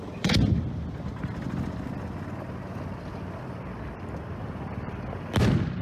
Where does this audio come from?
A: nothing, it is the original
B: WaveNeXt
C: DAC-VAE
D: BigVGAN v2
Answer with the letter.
A